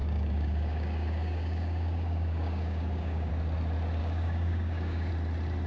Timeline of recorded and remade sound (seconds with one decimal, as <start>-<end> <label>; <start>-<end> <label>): 0.0-3.3 remade; 3.3-4.0 recorded; 4.0-5.1 remade; 5.1-5.7 recorded